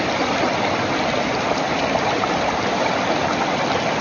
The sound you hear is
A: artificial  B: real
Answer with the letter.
A